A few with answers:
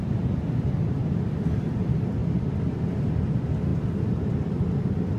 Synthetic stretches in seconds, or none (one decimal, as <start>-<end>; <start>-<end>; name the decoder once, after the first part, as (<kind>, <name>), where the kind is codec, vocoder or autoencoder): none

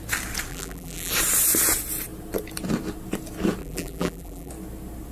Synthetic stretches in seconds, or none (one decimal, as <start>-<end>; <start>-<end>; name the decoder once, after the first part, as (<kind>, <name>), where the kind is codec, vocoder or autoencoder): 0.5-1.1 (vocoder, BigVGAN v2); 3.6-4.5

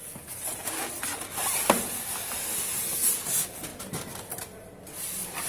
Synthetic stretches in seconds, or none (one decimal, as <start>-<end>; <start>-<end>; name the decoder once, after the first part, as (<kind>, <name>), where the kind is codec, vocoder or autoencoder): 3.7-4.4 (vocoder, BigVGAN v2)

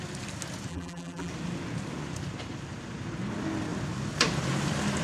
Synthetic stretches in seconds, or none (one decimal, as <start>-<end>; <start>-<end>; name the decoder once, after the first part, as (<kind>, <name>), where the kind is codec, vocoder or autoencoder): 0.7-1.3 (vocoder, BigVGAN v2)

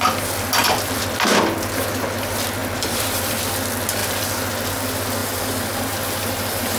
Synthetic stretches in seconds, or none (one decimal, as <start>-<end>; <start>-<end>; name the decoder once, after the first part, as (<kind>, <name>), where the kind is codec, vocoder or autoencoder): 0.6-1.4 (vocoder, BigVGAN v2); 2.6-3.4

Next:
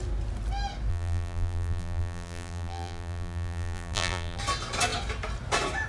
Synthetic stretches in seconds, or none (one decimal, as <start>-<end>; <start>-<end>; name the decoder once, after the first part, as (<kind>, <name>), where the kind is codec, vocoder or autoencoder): 0.9-4.4 (vocoder, BigVGAN v2)